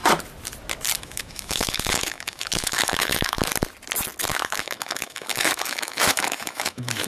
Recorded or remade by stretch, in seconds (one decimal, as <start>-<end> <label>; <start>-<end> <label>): 0.0-1.0 recorded; 1.0-3.5 remade; 3.5-4.3 recorded; 4.3-7.1 remade